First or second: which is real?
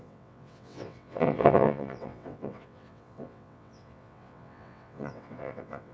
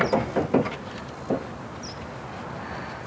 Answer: second